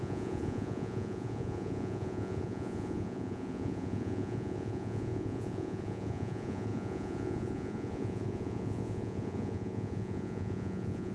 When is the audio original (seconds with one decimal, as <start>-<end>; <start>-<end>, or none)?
none